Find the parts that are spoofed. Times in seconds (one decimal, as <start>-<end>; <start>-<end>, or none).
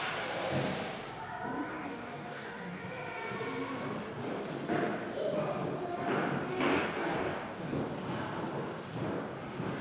1.7-2.8; 6.5-7.8